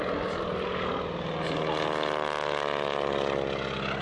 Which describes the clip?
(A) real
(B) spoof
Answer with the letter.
A